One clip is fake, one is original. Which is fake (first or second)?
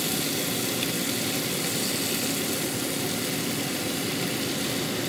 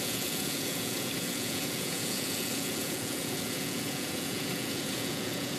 second